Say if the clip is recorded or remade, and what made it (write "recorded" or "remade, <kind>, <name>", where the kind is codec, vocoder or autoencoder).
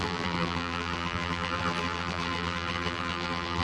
remade, vocoder, BigVGAN v2